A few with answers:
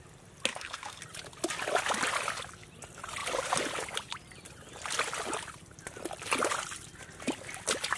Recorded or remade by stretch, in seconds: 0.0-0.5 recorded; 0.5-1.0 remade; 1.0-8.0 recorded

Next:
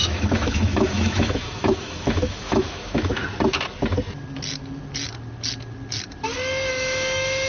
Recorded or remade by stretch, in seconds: 0.0-3.2 remade; 3.2-6.7 recorded; 6.7-7.5 remade

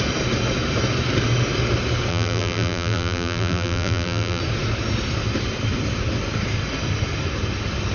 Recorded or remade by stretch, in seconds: 0.0-2.1 recorded; 2.1-4.4 remade; 4.4-7.9 recorded

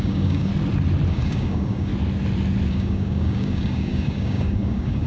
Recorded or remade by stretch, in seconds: 0.0-0.5 remade; 0.5-1.1 recorded; 1.1-1.9 remade; 1.9-2.7 recorded; 2.7-5.1 remade

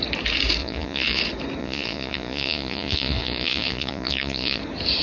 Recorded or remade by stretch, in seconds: 0.0-0.6 recorded; 0.6-1.2 remade; 1.2-1.6 recorded; 1.6-4.6 remade; 4.6-5.0 recorded